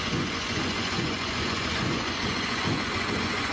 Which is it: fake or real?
fake